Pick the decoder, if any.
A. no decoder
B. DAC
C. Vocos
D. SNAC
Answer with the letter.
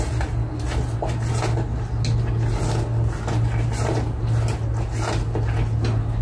A